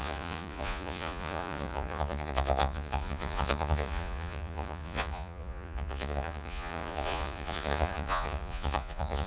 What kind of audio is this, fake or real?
fake